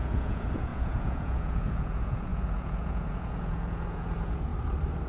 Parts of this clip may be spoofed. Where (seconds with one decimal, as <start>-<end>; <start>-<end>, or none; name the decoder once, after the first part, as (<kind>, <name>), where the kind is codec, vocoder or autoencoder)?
0.0-4.5 (vocoder, Vocos)